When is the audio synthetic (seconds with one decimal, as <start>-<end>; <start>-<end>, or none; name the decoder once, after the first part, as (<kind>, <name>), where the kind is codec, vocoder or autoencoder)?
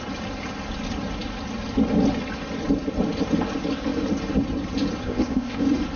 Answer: 5.0-5.6 (codec, ZipCodec)